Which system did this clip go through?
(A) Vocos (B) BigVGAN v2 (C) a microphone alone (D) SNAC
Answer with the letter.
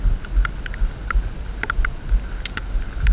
C